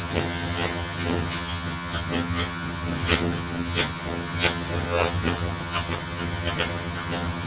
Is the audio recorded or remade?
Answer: remade